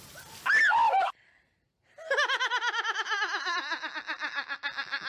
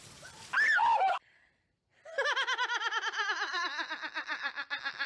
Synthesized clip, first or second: second